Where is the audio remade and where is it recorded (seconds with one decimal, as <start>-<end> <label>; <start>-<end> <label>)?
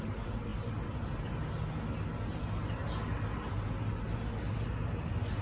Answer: 0.0-5.4 recorded